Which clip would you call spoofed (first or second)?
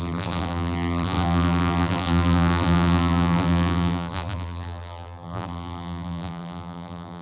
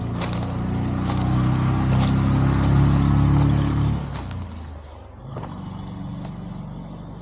first